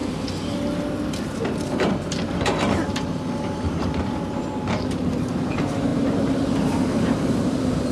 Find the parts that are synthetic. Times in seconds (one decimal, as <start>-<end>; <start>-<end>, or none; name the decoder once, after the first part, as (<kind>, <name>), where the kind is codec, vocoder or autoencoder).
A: 2.2-7.9 (vocoder, BigVGAN v2)